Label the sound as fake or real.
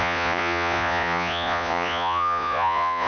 fake